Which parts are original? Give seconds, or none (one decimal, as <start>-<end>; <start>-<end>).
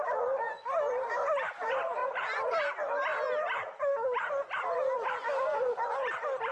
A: 0.0-6.5